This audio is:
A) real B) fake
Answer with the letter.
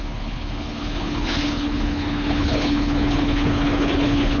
B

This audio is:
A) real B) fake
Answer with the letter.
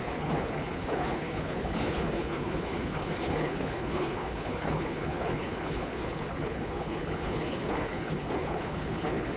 B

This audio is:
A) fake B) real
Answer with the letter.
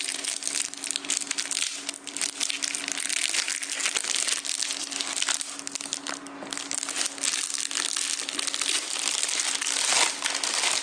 B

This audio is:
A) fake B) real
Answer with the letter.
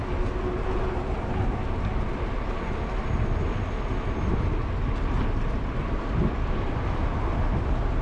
B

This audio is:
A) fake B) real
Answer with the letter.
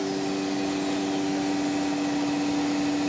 B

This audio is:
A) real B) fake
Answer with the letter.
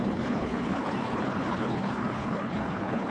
B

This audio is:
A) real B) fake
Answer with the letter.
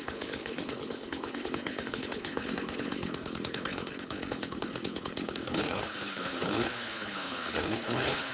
B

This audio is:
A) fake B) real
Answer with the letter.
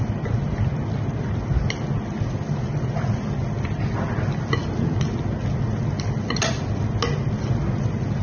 B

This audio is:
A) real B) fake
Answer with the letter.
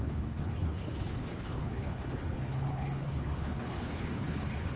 B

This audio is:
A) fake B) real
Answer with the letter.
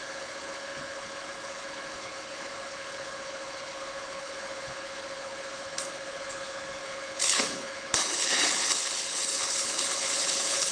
A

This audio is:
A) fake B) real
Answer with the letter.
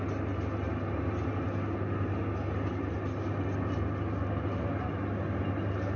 B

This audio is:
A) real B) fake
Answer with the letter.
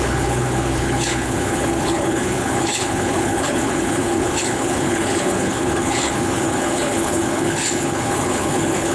B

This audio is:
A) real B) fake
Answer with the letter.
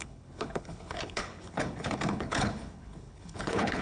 B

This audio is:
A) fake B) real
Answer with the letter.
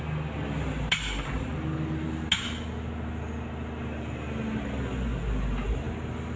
B